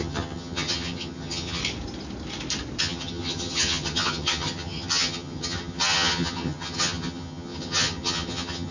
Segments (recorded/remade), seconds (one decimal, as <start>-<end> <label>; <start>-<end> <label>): 0.0-1.6 remade; 1.6-2.8 recorded; 2.8-8.7 remade